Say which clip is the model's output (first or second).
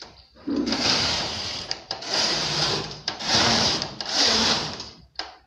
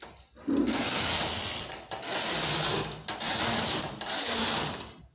first